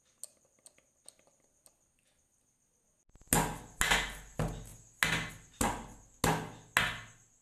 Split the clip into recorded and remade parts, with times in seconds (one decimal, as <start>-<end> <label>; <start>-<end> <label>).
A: 0.0-7.4 recorded